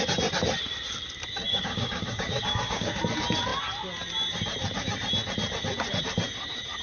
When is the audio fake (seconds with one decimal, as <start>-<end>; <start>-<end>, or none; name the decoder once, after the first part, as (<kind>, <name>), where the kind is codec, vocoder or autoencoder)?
1.5-3.0 (codec, DAC)